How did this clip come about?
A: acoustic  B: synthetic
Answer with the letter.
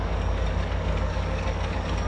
B